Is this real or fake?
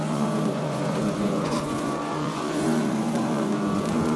fake